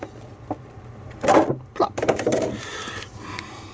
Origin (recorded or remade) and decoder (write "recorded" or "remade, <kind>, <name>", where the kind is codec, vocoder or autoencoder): remade, vocoder, BigVGAN v2